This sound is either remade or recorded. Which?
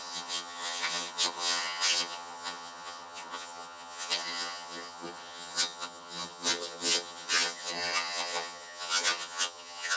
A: remade